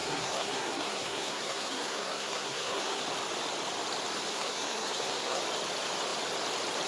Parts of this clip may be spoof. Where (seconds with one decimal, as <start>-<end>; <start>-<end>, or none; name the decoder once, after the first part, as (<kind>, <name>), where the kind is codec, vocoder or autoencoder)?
0.0-3.0 (codec, SNAC); 4.3-5.4